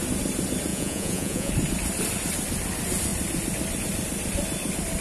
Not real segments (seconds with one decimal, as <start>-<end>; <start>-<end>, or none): 0.7-1.5